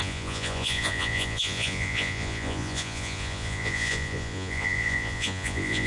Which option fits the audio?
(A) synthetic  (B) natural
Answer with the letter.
A